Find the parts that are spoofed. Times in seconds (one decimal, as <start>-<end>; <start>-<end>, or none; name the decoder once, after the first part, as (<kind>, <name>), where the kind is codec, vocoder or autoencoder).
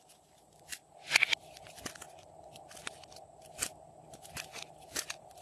none